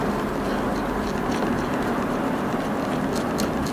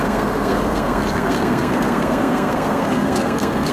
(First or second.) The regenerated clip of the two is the second